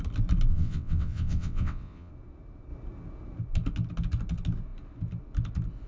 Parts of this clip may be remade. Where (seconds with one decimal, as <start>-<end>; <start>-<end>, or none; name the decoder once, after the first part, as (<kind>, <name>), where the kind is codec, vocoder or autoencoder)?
0.5-2.1 (vocoder, WaveNeXt)